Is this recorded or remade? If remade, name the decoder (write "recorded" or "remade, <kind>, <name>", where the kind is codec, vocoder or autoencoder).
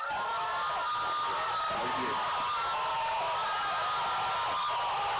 recorded